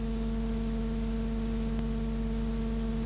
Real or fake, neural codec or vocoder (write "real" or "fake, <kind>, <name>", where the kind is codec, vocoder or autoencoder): real